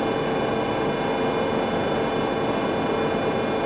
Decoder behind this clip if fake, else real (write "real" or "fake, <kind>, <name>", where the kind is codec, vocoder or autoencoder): real